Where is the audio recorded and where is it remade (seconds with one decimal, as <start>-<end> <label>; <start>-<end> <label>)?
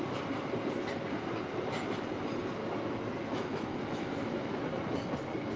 0.0-2.6 recorded; 2.6-4.6 remade; 4.6-5.6 recorded